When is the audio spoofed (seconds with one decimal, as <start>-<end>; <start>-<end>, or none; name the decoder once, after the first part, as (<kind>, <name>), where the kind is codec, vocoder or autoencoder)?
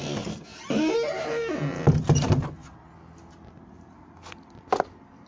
none